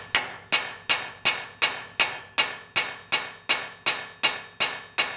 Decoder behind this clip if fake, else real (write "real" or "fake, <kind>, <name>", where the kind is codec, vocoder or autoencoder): real